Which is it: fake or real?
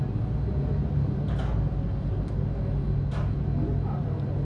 real